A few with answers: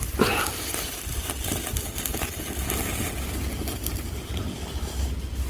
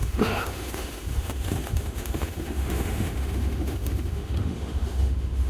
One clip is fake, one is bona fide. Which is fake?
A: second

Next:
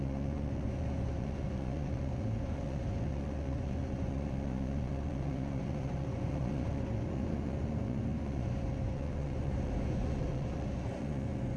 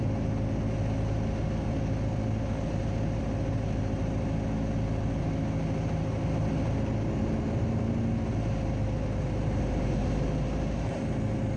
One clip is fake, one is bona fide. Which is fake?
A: first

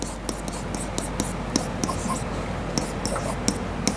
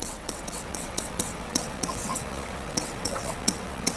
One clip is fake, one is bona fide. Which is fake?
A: second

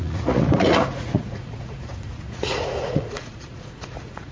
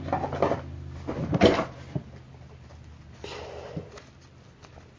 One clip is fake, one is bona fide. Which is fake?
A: first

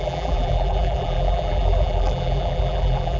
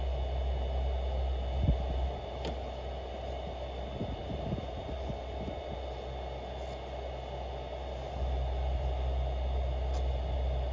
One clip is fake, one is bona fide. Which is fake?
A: first